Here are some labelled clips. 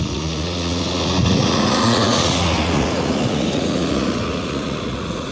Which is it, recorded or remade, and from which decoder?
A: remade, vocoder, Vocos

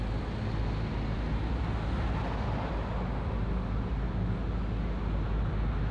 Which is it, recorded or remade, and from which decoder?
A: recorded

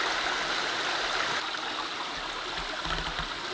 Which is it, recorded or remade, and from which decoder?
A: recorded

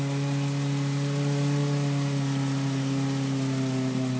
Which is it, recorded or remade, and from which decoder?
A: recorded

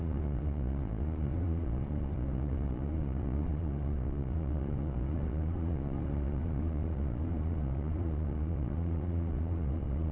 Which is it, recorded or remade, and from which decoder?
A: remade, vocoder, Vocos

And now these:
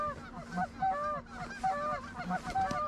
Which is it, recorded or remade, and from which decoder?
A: recorded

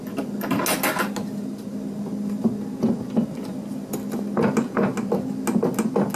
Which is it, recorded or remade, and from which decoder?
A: recorded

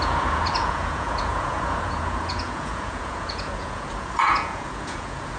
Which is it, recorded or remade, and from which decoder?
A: remade, vocoder, Vocos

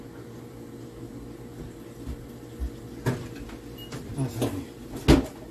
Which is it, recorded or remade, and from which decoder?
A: recorded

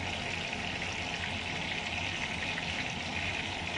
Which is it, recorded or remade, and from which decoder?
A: recorded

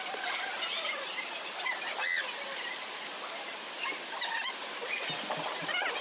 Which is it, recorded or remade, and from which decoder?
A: recorded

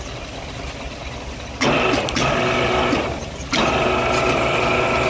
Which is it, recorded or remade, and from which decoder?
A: recorded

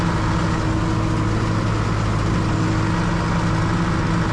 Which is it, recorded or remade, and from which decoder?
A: recorded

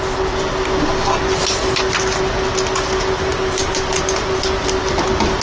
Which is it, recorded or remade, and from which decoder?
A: recorded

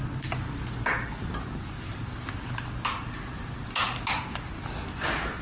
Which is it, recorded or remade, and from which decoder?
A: recorded